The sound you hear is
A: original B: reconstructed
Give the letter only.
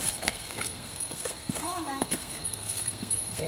B